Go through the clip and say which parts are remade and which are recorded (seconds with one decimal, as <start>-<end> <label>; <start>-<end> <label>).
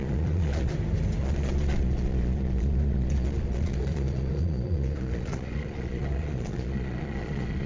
0.0-0.7 remade; 0.7-1.2 recorded; 1.2-7.7 remade